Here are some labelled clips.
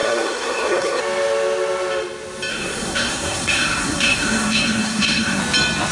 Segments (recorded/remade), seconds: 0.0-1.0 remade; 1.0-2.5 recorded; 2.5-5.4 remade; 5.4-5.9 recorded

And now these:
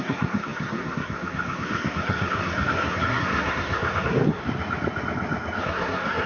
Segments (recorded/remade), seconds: 0.0-4.4 remade; 4.4-5.6 recorded; 5.6-6.3 remade

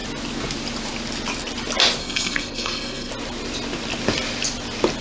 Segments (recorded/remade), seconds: 0.0-2.0 recorded; 2.0-3.1 remade; 3.1-5.0 recorded

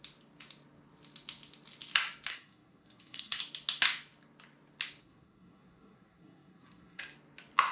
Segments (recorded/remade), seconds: 0.0-2.3 recorded; 2.3-3.4 remade; 3.4-5.0 recorded; 5.0-7.0 remade; 7.0-7.7 recorded

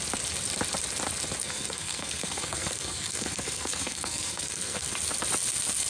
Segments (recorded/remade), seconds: 0.0-1.4 recorded; 1.4-4.9 remade; 4.9-5.9 recorded